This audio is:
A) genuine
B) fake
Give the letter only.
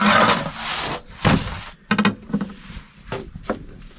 A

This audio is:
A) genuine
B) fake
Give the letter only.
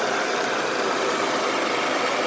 A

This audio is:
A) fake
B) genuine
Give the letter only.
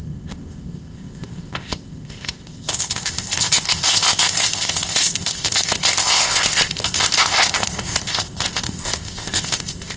A